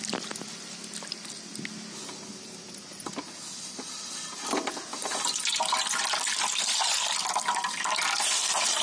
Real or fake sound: real